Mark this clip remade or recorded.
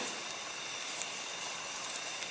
recorded